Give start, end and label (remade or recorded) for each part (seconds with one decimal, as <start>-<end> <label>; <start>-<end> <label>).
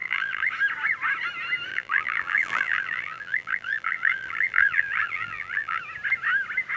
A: 0.0-0.5 remade; 0.5-1.7 recorded; 1.7-5.8 remade; 5.8-6.8 recorded